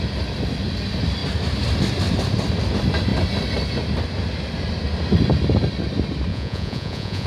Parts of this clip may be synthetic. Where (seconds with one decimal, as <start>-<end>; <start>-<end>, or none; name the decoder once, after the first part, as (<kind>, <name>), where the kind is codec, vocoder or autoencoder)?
6.3-7.3 (vocoder, Vocos)